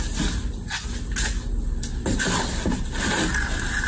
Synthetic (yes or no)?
no